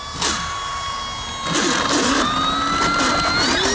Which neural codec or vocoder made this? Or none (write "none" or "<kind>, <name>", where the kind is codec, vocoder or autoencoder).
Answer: none